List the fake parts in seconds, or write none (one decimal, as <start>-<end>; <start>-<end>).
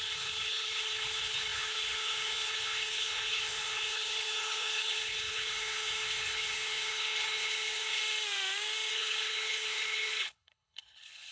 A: 0.0-8.0; 8.9-11.3